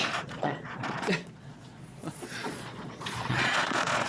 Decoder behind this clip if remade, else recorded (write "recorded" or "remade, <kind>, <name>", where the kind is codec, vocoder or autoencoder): remade, vocoder, Vocos